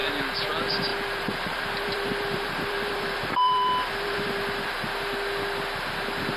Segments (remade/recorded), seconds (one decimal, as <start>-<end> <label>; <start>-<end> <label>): 0.0-0.9 recorded; 0.9-4.7 remade; 4.7-6.4 recorded